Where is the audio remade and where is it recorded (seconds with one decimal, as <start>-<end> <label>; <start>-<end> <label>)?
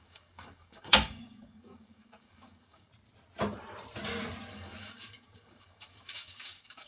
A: 0.0-2.9 remade; 2.9-4.5 recorded; 4.5-6.9 remade